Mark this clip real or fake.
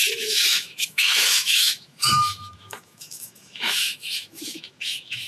fake